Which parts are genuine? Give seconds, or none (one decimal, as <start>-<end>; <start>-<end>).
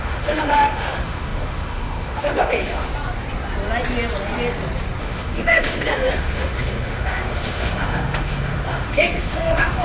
2.9-5.0